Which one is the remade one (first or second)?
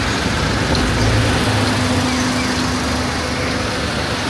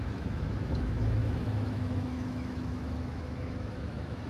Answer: second